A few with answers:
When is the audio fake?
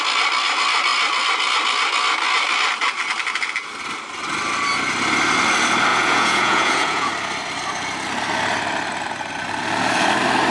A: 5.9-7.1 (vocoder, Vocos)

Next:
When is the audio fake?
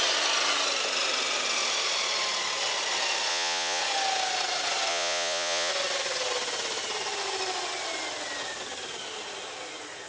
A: 3.3-3.8 (vocoder, Vocos); 4.9-5.7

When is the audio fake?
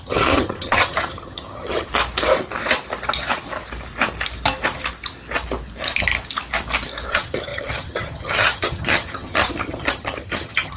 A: 0.0-1.9 (vocoder, HiFi-GAN); 7.1-10.8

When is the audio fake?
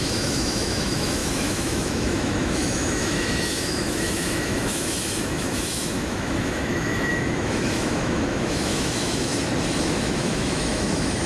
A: 0.0-9.3 (autoencoder, DAC-VAE); 9.8-11.3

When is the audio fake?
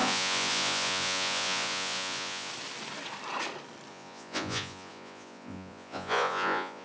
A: 0.0-2.5 (vocoder, Vocos); 3.9-6.8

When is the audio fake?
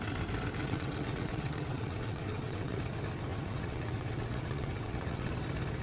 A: 0.6-2.8 (vocoder, WaveNeXt); 3.3-5.3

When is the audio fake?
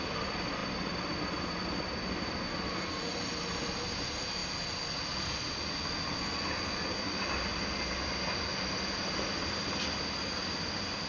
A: 7.5-8.3 (vocoder, BigVGAN v2)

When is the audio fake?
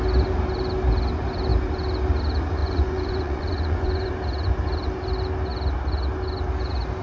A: 2.6-4.1 (vocoder, Vocos)